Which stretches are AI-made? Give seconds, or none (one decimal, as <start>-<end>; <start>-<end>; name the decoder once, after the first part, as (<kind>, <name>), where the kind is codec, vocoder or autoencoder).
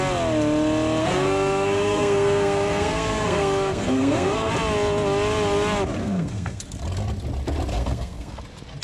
1.0-4.5 (codec, SNAC); 6.0-6.6; 7.7-8.4